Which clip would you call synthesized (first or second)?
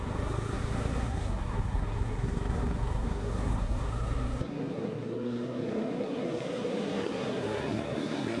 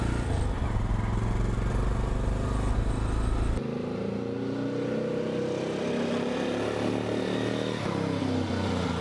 first